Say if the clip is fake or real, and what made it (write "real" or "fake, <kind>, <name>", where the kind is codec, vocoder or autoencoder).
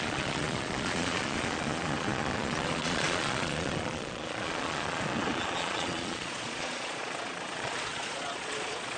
fake, vocoder, Vocos